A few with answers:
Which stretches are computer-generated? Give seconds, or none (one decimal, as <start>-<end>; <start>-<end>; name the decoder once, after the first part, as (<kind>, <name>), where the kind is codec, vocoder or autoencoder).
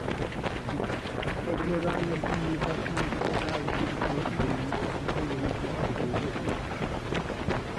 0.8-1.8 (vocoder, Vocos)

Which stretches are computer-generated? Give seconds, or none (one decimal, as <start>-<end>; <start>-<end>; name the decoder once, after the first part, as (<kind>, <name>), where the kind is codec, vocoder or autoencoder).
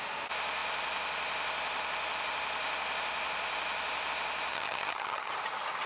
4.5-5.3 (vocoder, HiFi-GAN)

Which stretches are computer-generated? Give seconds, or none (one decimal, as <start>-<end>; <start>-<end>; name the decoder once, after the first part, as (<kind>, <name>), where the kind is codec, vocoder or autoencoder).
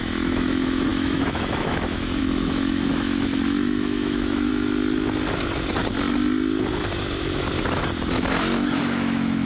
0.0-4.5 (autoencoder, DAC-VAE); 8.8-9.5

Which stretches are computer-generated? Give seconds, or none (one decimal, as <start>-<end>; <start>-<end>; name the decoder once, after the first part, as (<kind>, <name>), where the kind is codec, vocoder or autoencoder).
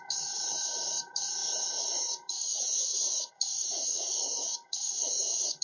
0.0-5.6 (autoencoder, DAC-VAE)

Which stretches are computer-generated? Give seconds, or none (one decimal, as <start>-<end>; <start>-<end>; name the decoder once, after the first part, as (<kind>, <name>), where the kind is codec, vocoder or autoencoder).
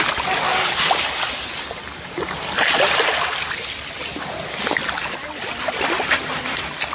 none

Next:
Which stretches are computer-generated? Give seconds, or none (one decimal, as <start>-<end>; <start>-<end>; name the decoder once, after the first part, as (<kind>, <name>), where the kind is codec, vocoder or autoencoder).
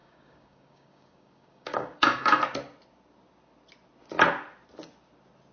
0.0-2.4 (codec, DAC)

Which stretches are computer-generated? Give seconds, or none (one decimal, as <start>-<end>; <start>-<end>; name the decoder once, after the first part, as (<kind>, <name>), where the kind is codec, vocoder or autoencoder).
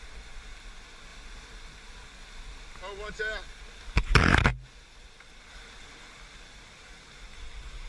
none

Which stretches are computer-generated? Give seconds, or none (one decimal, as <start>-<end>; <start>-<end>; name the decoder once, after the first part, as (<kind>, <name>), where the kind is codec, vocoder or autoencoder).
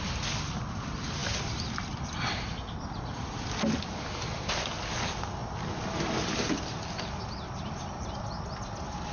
none